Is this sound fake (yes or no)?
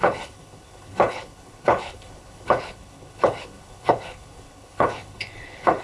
yes